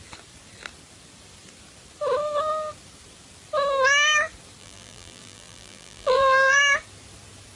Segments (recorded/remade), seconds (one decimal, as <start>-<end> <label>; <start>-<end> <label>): 0.0-4.6 recorded; 4.6-6.6 remade; 6.6-7.6 recorded